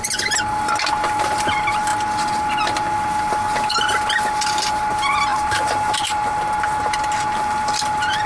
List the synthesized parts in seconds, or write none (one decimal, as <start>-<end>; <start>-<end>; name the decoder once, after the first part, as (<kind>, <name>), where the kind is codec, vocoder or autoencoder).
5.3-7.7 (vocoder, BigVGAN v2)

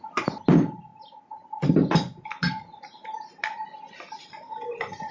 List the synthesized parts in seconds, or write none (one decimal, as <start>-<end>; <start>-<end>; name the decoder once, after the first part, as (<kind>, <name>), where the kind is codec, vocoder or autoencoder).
none

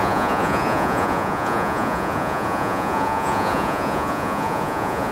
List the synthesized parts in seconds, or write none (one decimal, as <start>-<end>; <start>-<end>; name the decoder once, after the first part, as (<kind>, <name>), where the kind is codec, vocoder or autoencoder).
0.0-5.1 (vocoder, Vocos)

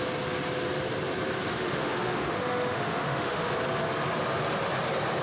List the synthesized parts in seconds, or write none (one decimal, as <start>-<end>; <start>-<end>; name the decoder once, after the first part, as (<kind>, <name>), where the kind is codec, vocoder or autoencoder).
1.5-3.5 (autoencoder, DAC-VAE)

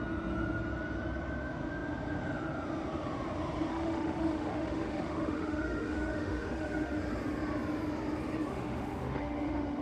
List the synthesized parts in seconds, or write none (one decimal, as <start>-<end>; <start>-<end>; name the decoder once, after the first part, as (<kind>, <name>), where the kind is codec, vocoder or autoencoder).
3.7-7.0 (autoencoder, DAC-VAE); 8.5-9.8